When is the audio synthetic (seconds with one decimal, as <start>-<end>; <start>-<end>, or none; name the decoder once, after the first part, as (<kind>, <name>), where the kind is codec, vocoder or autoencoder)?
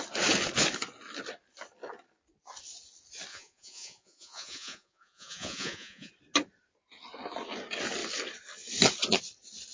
3.3-6.1 (vocoder, Vocos)